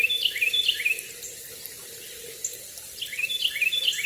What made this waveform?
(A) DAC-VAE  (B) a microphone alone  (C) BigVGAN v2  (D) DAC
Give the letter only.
B